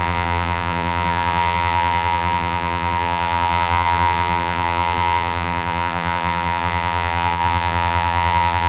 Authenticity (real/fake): fake